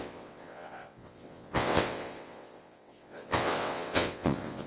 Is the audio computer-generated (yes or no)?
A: yes